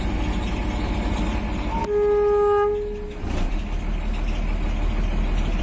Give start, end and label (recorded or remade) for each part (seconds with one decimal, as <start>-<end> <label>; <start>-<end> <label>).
0.0-5.6 recorded